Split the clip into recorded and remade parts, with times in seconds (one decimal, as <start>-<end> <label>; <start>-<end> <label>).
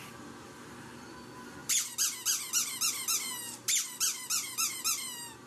0.0-5.5 recorded